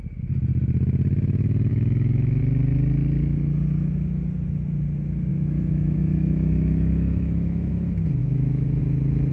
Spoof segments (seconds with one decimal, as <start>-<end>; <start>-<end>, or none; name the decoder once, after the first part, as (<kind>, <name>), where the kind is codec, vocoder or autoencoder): 1.7-2.4 (autoencoder, DAC-VAE); 5.3-7.7; 8.2-8.8